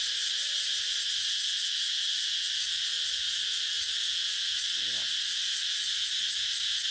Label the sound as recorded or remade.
recorded